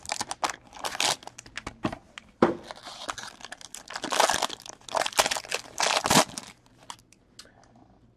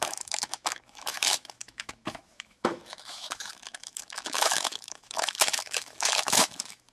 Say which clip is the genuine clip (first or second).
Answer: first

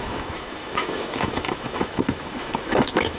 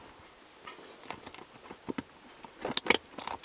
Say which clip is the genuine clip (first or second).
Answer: second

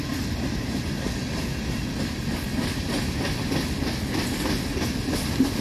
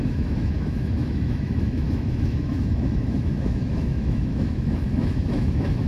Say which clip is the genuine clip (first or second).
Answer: first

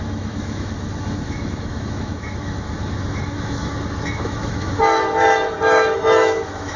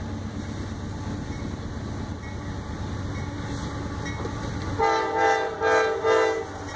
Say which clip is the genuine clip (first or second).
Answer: second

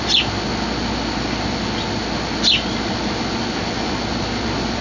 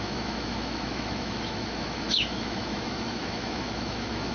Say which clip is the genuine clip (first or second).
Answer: first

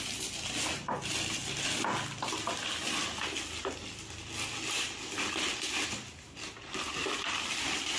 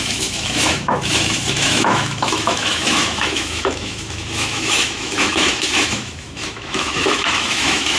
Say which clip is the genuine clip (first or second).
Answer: first